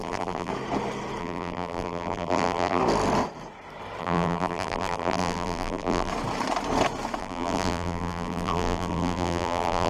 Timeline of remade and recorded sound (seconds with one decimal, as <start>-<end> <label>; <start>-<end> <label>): 0.0-0.5 remade; 0.5-1.2 recorded; 1.2-2.8 remade; 2.8-4.0 recorded; 4.0-6.1 remade; 6.1-7.2 recorded; 7.2-9.9 remade

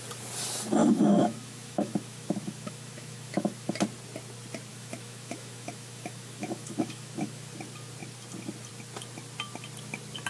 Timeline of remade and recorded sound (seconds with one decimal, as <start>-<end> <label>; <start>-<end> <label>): 0.0-0.8 recorded; 0.8-3.7 remade; 3.7-4.7 recorded; 4.7-7.5 remade; 7.5-10.3 recorded

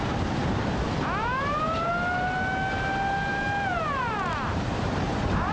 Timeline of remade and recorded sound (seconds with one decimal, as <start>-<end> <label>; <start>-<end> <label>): 0.0-0.4 recorded; 0.4-1.9 remade; 1.9-3.3 recorded; 3.3-5.5 remade

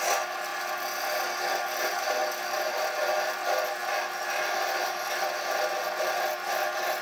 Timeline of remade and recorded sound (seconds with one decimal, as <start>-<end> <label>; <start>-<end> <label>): 0.0-7.0 recorded

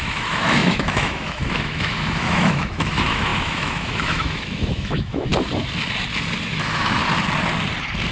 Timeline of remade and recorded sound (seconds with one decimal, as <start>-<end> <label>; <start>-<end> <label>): 0.0-5.3 remade; 5.3-6.5 recorded; 6.5-7.0 remade; 7.0-8.1 recorded

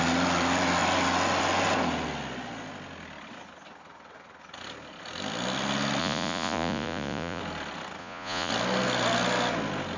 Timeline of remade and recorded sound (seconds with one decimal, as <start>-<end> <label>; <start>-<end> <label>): 0.0-6.0 recorded; 6.0-7.4 remade; 7.4-8.0 recorded; 8.0-8.5 remade; 8.5-10.0 recorded

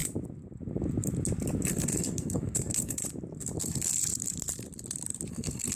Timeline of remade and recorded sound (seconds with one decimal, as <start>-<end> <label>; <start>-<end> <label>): 0.0-1.7 recorded; 1.7-3.0 remade; 3.0-3.6 recorded; 3.6-4.0 remade; 4.0-5.3 recorded; 5.3-5.7 remade